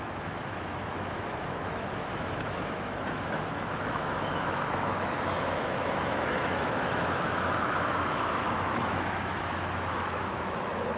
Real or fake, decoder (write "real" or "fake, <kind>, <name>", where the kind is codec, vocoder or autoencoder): fake, autoencoder, DAC-VAE